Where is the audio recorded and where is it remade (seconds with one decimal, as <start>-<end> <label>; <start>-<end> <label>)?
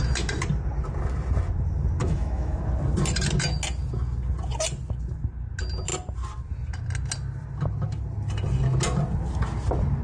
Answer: 0.0-2.0 recorded; 2.0-2.6 remade; 2.6-10.0 recorded